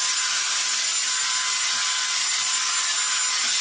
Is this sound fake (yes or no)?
no